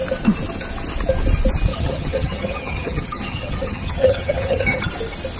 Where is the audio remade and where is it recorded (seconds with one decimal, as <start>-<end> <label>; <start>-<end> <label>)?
0.0-1.7 recorded; 1.7-4.9 remade; 4.9-5.4 recorded